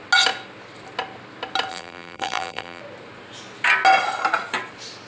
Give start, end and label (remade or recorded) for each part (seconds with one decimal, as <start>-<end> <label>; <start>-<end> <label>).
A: 0.0-1.7 recorded; 1.7-2.8 remade; 2.8-5.1 recorded

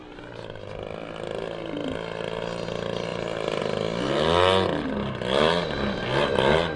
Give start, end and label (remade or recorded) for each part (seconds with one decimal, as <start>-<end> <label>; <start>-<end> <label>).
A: 0.0-6.8 recorded

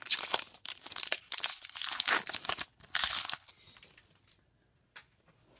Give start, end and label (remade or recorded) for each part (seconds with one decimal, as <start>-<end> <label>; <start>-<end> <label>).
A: 0.0-1.5 recorded; 1.5-2.1 remade; 2.1-2.9 recorded; 2.9-3.5 remade; 3.5-5.6 recorded

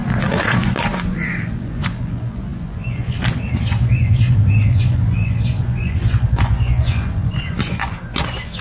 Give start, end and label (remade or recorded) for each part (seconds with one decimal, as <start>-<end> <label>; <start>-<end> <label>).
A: 0.0-8.6 remade

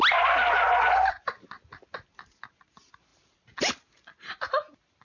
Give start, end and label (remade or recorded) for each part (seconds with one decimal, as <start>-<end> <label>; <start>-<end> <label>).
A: 0.0-5.0 recorded

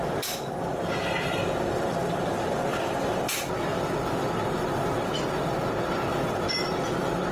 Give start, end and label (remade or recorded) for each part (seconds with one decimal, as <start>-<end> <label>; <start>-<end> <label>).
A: 0.0-0.7 recorded; 0.7-5.1 remade; 5.1-6.1 recorded; 6.1-7.3 remade

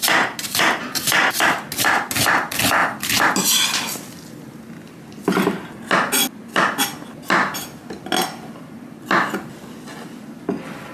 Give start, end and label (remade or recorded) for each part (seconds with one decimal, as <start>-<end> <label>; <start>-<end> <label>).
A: 0.0-10.9 recorded